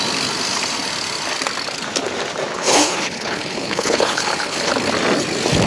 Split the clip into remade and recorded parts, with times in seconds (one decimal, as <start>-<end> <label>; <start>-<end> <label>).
0.0-2.5 recorded; 2.5-4.7 remade; 4.7-5.7 recorded